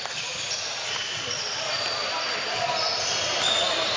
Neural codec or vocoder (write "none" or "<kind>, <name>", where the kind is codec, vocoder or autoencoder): none